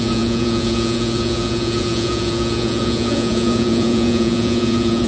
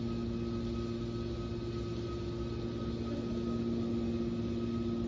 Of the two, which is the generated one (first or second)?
first